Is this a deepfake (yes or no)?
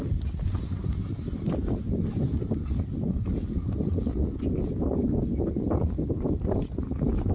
no